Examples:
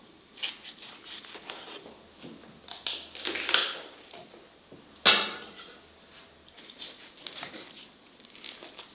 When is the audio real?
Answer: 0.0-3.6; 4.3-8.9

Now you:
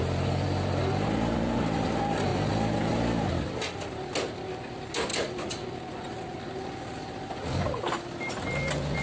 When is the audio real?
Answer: 0.0-9.0

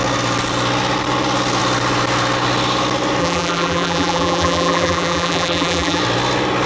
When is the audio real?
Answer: 0.0-3.2; 6.0-6.7

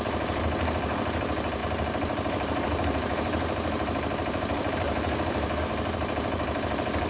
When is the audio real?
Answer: none

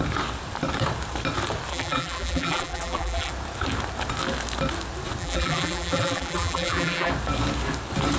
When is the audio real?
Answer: 0.0-1.7; 3.3-5.2; 7.1-8.2

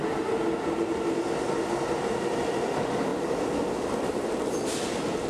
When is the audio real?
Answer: 0.0-5.3